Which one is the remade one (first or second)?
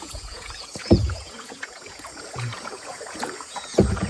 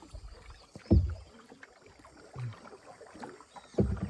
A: first